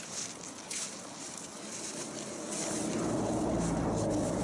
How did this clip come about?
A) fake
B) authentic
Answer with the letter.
B